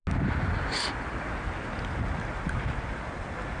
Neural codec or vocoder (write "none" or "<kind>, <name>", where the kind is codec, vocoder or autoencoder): none